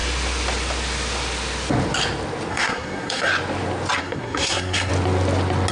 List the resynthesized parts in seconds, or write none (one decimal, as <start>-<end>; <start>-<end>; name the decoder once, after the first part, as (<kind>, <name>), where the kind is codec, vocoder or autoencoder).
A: 2.5-3.3 (codec, SNAC); 4.0-4.9